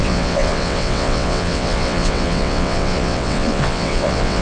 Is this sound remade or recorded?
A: remade